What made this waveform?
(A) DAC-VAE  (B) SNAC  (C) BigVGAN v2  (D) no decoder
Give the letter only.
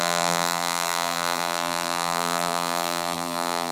C